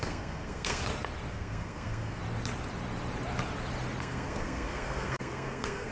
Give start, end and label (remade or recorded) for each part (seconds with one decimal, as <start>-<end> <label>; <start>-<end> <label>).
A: 0.0-0.8 remade; 0.8-1.3 recorded; 1.3-2.2 remade; 2.2-4.0 recorded; 4.0-5.9 remade